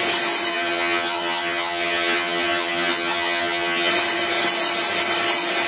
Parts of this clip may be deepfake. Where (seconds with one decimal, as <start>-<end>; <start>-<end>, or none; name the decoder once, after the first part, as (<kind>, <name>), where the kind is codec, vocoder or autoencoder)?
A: 0.5-3.9 (vocoder, HiFi-GAN)